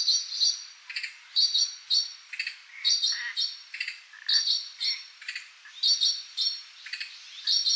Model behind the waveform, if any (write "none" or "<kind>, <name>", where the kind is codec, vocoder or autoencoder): none